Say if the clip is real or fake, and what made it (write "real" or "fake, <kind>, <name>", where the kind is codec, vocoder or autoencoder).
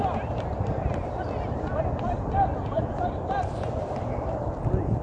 real